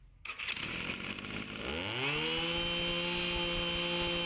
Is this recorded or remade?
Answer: recorded